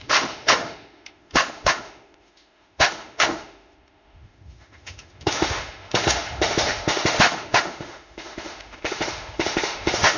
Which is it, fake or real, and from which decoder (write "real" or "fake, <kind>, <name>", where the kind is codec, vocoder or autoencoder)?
fake, autoencoder, DAC-VAE